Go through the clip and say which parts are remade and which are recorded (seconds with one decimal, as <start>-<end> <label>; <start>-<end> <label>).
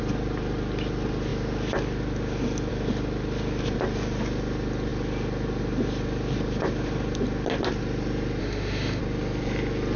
0.0-8.4 recorded; 8.4-9.0 remade; 9.0-10.0 recorded